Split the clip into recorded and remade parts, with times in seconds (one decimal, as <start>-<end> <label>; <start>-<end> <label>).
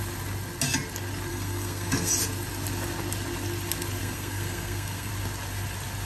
0.0-1.3 recorded; 1.3-2.1 remade; 2.1-4.0 recorded; 4.0-5.1 remade; 5.1-6.1 recorded